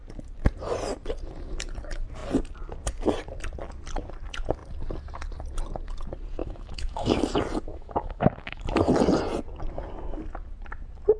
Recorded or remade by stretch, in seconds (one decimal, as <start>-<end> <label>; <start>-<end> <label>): 0.0-6.4 recorded; 6.4-7.2 remade; 7.2-7.7 recorded; 7.7-8.6 remade; 8.6-11.2 recorded